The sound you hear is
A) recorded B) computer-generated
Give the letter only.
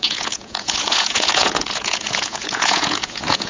B